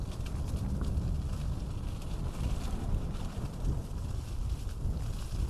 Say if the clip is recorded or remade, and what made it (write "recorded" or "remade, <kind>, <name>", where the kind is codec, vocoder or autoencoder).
recorded